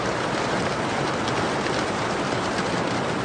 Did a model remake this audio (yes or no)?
no